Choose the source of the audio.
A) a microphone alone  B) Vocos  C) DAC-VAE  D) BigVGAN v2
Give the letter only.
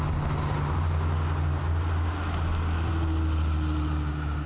A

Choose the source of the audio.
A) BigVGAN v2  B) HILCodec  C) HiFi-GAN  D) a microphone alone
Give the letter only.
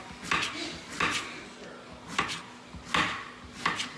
D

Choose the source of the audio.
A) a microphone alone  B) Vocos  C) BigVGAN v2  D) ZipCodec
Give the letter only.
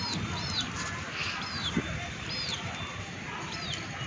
C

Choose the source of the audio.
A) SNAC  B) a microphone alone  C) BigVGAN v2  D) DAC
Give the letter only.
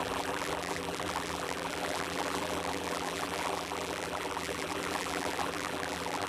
C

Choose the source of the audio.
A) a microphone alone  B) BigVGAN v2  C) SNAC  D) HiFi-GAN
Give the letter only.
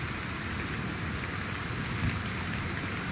A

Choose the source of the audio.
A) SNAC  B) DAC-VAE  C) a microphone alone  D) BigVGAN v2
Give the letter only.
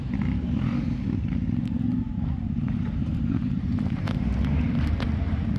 D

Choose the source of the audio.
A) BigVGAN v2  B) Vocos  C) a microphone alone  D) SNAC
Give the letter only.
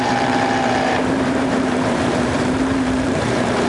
A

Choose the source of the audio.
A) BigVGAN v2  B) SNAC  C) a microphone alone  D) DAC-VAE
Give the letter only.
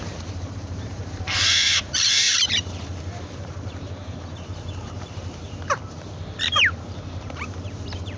A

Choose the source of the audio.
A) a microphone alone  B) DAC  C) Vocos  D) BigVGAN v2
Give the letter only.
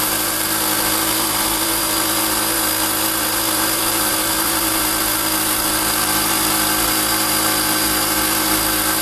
D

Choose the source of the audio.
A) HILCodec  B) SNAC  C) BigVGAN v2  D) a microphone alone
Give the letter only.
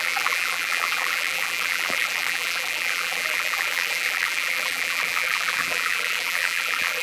C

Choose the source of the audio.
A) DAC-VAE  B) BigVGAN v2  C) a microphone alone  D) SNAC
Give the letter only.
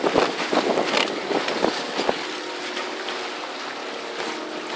B